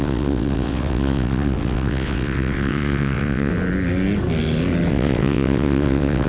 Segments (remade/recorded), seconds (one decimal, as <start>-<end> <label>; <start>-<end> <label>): 0.0-3.5 remade; 3.5-4.9 recorded; 4.9-6.3 remade